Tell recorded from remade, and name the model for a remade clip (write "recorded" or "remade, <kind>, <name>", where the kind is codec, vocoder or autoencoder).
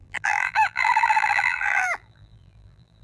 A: remade, vocoder, BigVGAN v2